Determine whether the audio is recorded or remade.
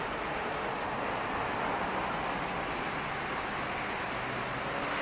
recorded